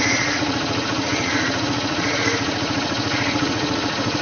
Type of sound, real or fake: fake